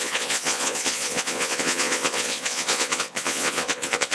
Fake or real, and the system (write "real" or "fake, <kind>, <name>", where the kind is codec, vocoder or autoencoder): fake, vocoder, Vocos